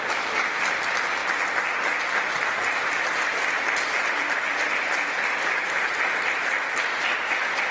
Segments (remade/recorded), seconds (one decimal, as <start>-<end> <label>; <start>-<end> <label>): 0.0-7.7 recorded